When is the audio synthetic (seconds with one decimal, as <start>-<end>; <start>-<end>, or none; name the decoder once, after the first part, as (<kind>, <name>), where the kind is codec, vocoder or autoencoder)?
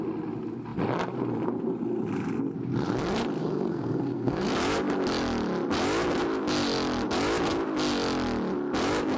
3.4-4.5 (codec, SNAC)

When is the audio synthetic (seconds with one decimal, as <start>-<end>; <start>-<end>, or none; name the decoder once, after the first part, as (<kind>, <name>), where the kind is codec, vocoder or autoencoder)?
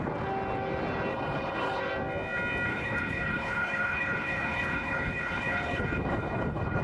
1.1-1.8 (codec, HILCodec); 2.7-6.8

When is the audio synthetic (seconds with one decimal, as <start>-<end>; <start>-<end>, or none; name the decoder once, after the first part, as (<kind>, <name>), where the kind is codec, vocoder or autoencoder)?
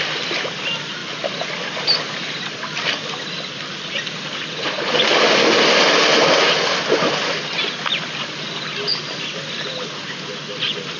none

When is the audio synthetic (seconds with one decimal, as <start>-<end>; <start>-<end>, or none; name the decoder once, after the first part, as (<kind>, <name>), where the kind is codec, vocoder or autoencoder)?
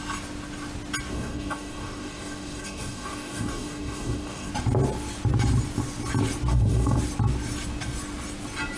1.1-4.5 (codec, DAC); 6.5-7.0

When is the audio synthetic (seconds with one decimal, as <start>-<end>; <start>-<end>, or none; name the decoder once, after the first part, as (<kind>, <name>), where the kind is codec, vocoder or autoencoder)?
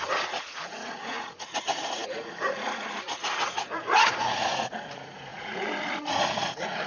0.0-6.9 (vocoder, Vocos)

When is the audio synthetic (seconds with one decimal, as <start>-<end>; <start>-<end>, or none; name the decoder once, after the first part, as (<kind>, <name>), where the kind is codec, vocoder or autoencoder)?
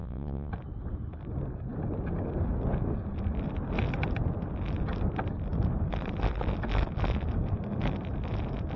0.0-0.5 (vocoder, WaveNeXt)